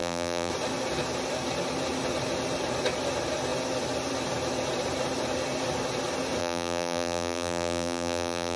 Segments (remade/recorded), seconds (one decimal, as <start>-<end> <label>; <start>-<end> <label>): 0.0-0.5 remade; 0.5-6.4 recorded; 6.4-8.6 remade